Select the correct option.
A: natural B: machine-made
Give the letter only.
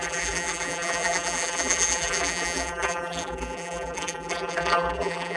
B